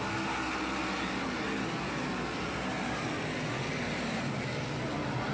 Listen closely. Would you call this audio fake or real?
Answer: real